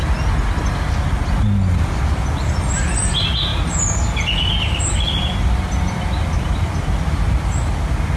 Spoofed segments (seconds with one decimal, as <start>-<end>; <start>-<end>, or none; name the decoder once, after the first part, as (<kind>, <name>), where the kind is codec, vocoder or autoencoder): none